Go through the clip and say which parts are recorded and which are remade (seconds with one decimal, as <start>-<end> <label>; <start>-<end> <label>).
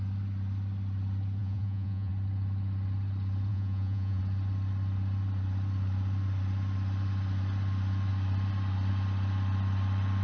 0.0-1.4 recorded; 1.4-2.1 remade; 2.1-3.5 recorded; 3.5-4.2 remade; 4.2-10.2 recorded